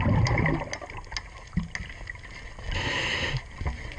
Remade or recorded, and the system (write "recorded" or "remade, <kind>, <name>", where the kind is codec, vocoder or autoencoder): recorded